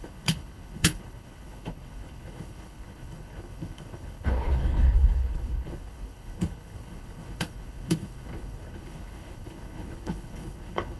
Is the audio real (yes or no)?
no